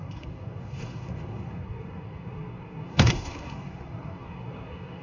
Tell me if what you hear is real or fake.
fake